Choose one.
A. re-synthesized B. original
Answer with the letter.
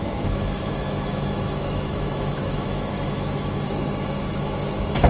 A